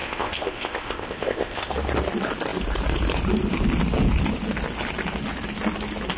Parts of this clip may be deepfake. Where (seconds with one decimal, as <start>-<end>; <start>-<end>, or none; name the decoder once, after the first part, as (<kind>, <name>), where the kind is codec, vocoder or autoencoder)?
0.0-1.7 (codec, ZipCodec)